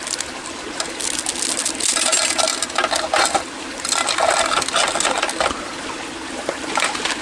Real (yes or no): yes